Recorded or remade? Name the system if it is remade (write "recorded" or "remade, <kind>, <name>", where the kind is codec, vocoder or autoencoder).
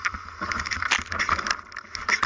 recorded